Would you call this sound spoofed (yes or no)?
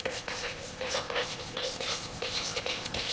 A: yes